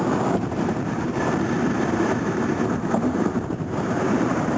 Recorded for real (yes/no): no